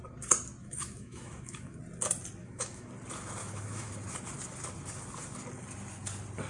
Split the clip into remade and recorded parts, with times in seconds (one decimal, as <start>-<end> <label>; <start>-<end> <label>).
0.0-0.6 recorded; 0.6-1.8 remade; 1.8-2.4 recorded; 2.4-2.9 remade; 2.9-3.4 recorded; 3.4-3.9 remade; 3.9-6.5 recorded